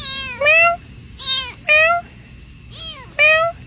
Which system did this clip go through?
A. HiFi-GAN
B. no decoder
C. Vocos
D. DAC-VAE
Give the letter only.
B